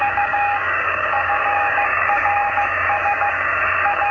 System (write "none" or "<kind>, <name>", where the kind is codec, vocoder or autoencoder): codec, DAC